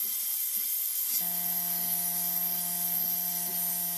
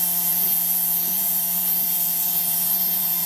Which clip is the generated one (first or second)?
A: second